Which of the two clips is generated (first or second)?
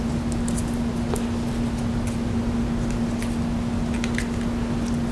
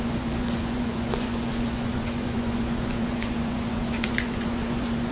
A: second